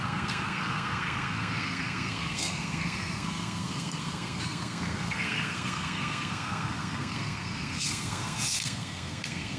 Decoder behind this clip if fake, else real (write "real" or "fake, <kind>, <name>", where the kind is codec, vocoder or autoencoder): fake, codec, SNAC